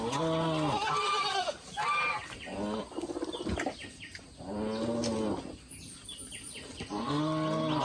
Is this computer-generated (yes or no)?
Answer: no